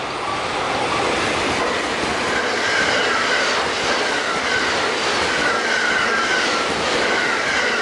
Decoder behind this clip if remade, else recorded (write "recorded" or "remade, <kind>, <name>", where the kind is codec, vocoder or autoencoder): recorded